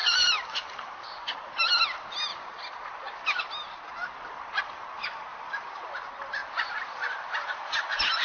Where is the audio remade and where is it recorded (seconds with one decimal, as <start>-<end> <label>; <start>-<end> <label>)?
0.0-1.5 remade; 1.5-2.3 recorded; 2.3-3.4 remade; 3.4-5.3 recorded; 5.3-5.9 remade; 5.9-6.4 recorded; 6.4-8.2 remade